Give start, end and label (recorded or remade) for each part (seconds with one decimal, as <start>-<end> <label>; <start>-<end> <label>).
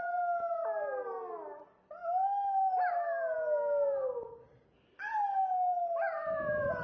0.0-6.8 recorded